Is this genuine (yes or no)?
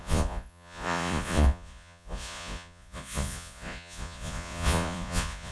no